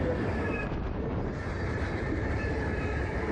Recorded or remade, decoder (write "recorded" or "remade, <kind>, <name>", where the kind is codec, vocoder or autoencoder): remade, vocoder, BigVGAN v2